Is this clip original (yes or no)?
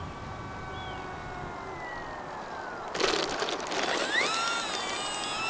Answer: yes